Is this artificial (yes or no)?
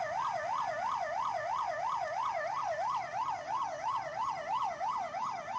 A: no